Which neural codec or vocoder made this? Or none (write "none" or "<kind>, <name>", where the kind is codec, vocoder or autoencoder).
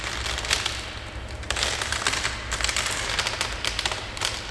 none